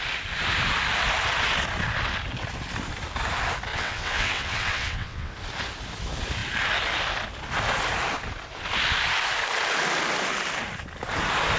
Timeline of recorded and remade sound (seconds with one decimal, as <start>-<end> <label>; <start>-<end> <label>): 0.0-3.7 recorded; 3.7-5.3 remade; 5.3-11.6 recorded